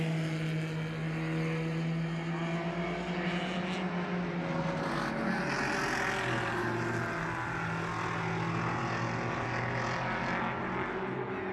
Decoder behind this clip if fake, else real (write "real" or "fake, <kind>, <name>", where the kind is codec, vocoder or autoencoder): real